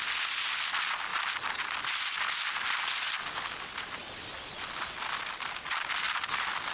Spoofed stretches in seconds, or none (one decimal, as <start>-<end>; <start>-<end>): none